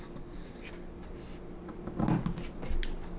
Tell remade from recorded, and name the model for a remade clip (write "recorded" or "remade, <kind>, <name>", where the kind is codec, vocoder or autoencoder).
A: recorded